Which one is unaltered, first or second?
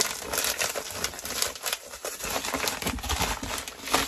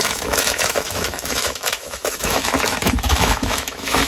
first